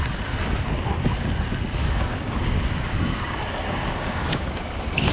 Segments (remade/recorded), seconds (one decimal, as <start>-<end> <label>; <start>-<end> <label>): 0.0-1.8 recorded; 1.8-5.1 remade

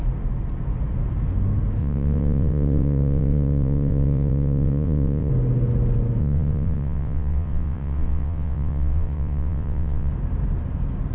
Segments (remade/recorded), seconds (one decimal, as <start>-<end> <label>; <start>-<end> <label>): 0.0-1.8 recorded; 1.8-5.3 remade; 5.3-6.2 recorded; 6.2-10.1 remade; 10.1-11.1 recorded

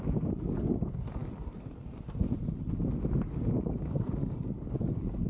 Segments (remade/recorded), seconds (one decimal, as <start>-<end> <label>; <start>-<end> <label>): 0.0-5.3 recorded